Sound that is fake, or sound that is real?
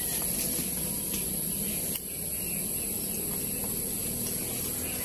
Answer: real